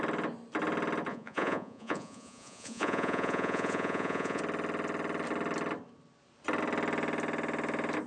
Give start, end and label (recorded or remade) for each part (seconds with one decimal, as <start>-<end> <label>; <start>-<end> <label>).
0.0-1.1 recorded; 1.1-4.4 remade; 4.4-8.1 recorded